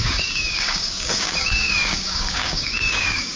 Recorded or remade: remade